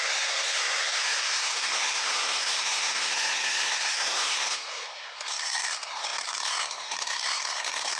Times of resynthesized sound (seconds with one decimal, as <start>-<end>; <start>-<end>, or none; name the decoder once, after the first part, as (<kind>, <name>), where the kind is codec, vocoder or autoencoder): 0.0-8.0 (codec, SNAC)

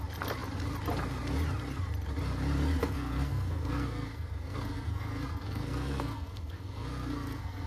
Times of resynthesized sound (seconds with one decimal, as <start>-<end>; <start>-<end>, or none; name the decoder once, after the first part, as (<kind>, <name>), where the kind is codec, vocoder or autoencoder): 2.8-7.7 (codec, SNAC)

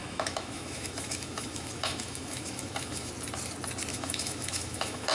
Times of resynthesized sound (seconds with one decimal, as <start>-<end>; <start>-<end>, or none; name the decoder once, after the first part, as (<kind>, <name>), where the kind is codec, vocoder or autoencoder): 0.0-3.1 (autoencoder, DAC-VAE); 3.9-5.1

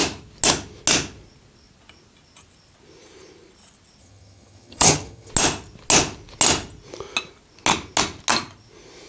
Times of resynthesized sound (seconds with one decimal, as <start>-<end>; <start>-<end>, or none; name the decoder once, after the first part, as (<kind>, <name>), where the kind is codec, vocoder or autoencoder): 4.0-5.3 (vocoder, HiFi-GAN)